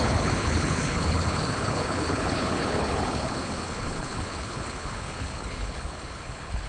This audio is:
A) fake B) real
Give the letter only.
A